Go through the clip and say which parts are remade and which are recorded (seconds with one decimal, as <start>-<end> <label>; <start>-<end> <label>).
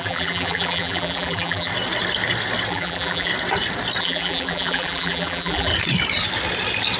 0.0-1.7 remade; 1.7-2.7 recorded; 2.7-3.3 remade; 3.3-4.0 recorded; 4.0-5.7 remade; 5.7-7.0 recorded